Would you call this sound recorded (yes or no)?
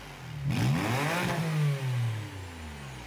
yes